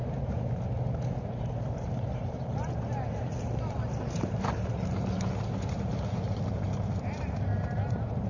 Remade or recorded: remade